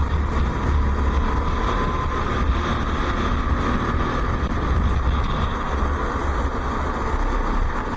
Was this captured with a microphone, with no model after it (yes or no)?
yes